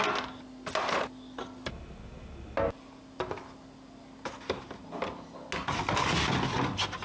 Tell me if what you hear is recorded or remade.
recorded